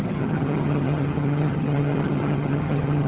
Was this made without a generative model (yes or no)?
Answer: no